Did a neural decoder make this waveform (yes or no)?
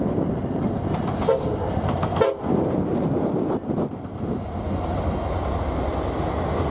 no